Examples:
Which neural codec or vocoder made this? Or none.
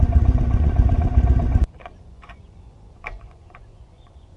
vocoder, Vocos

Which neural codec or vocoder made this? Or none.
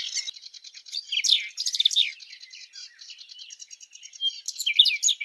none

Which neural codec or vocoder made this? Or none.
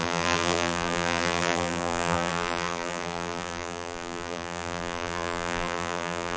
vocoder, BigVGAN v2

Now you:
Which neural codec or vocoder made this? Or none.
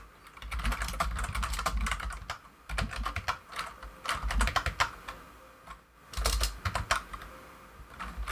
none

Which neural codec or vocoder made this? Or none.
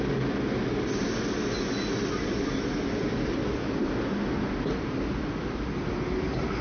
none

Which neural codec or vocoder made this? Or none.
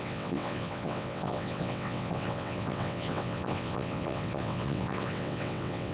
vocoder, WaveNeXt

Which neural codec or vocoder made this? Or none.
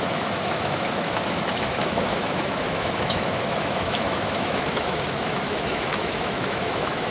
autoencoder, DAC-VAE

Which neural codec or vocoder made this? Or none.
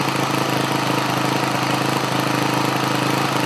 none